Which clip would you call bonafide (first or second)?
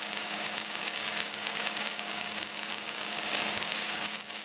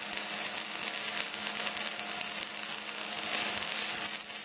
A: second